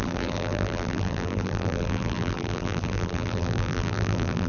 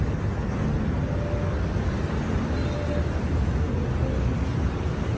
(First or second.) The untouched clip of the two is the second